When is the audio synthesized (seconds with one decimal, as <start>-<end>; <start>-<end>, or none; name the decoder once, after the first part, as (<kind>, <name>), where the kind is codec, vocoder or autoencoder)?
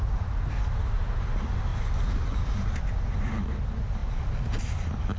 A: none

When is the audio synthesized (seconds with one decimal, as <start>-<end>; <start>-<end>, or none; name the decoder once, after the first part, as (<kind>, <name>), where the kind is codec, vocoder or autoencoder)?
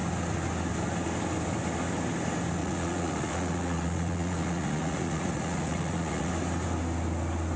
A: 2.6-6.3 (vocoder, Vocos)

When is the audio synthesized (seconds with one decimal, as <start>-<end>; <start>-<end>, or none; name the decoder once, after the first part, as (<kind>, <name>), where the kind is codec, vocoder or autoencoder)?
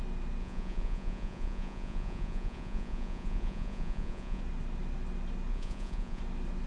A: 0.4-4.4 (vocoder, Vocos); 5.5-6.2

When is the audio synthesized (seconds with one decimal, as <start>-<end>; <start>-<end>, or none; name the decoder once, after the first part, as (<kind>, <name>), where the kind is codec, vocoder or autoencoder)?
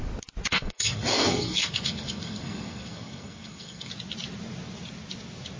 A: 0.5-3.9 (codec, SNAC)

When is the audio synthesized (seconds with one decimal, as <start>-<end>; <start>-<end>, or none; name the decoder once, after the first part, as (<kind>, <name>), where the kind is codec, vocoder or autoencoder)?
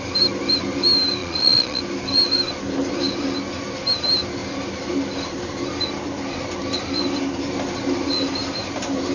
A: 1.2-1.8 (vocoder, Vocos)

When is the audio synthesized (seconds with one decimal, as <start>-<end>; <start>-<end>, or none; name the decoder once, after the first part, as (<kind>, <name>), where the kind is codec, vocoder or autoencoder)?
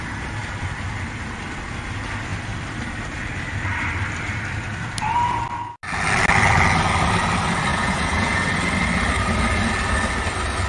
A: 7.7-8.5 (vocoder, Vocos)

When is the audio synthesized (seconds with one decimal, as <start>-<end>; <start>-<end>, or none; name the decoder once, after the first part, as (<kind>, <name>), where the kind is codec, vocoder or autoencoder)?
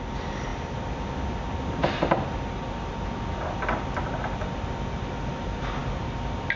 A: none